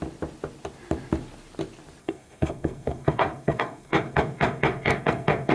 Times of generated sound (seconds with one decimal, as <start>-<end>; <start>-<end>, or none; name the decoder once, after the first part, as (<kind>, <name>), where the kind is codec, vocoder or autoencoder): 2.0-5.5 (codec, SNAC)